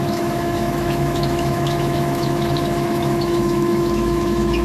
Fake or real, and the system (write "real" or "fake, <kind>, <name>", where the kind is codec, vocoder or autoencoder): fake, autoencoder, DAC-VAE